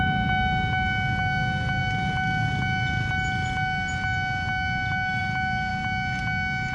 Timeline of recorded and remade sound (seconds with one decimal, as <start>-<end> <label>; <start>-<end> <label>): 0.0-6.7 recorded